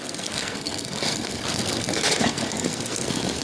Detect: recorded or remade remade